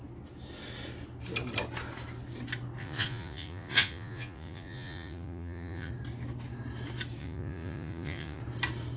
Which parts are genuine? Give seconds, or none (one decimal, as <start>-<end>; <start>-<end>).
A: 0.0-2.8; 5.9-7.2; 8.4-9.0